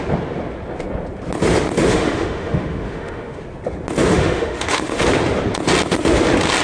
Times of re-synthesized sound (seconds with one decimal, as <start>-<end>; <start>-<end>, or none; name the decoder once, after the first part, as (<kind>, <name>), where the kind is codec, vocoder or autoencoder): 1.9-3.4 (autoencoder, DAC-VAE); 4.1-5.0